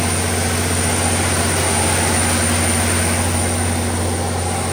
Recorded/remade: recorded